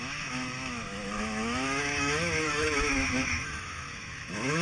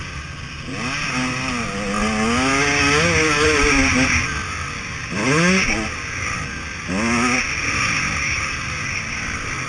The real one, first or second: second